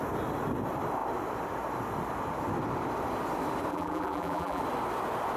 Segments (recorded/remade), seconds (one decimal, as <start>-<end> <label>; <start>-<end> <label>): 0.0-3.7 recorded; 3.7-4.6 remade; 4.6-5.4 recorded

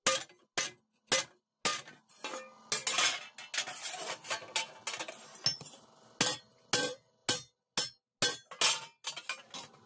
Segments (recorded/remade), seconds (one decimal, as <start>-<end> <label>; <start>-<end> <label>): 0.0-9.9 recorded

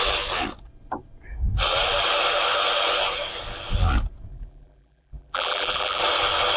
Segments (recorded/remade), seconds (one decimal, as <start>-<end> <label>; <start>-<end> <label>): 0.0-4.3 recorded; 4.3-6.0 remade; 6.0-6.6 recorded

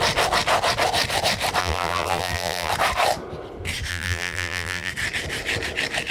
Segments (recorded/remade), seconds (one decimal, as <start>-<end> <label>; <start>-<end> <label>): 0.0-1.6 recorded; 1.6-2.7 remade; 2.7-3.9 recorded; 3.9-4.9 remade; 4.9-6.1 recorded